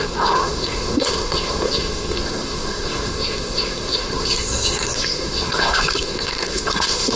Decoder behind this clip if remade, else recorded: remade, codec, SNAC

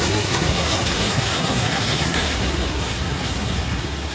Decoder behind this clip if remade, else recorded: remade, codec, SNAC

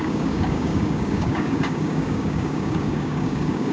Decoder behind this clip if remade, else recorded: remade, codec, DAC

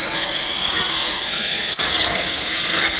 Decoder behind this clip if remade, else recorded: remade, codec, SNAC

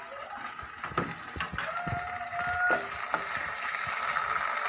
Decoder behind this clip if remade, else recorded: recorded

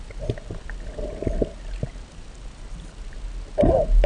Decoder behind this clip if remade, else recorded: recorded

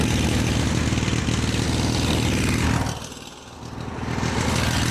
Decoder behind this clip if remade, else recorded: recorded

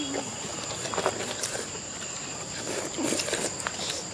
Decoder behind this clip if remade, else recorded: recorded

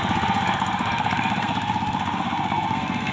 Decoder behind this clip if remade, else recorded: remade, codec, SNAC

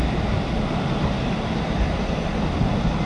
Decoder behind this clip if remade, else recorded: recorded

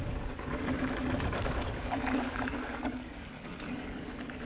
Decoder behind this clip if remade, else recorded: remade, codec, DAC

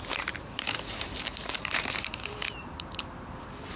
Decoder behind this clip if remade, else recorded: remade, vocoder, BigVGAN v2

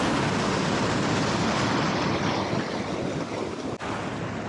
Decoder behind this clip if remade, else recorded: recorded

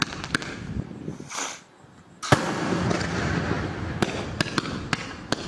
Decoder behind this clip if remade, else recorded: recorded